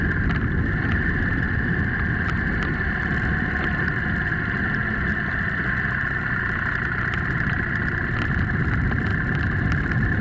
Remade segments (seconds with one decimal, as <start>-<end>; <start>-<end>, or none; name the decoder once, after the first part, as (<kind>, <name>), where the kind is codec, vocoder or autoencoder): none